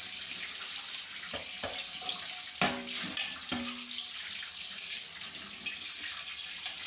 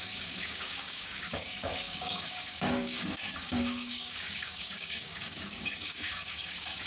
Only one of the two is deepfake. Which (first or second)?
second